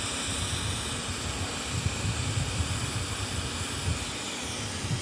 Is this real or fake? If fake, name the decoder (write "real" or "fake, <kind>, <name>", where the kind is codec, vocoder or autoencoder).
real